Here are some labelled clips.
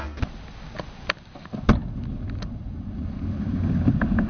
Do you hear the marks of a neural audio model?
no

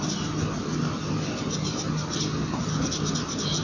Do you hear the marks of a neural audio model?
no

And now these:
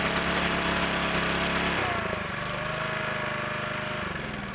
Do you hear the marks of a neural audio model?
no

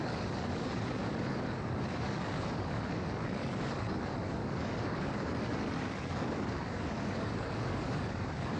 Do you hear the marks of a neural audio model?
yes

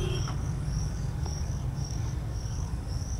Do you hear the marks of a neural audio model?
yes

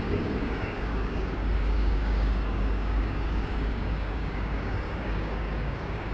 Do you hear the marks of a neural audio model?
yes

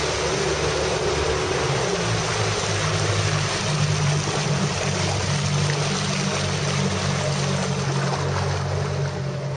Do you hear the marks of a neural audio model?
no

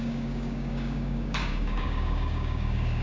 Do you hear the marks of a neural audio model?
yes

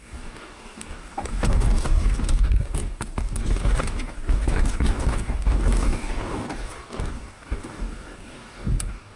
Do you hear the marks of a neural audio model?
yes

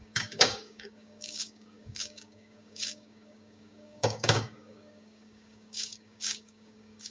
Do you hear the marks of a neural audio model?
yes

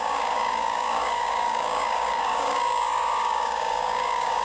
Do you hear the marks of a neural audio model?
yes